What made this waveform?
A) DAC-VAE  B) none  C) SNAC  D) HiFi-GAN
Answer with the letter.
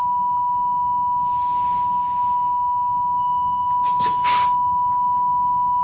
B